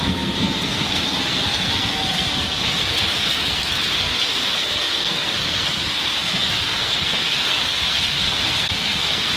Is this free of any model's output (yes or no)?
no